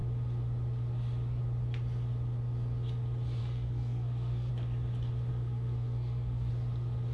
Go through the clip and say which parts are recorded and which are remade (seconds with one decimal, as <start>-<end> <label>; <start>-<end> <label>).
0.0-3.4 recorded; 3.4-4.5 remade; 4.5-5.3 recorded; 5.3-6.5 remade; 6.5-7.1 recorded